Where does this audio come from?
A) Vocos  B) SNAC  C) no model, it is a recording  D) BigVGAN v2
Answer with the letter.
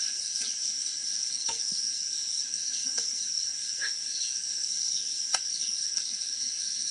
B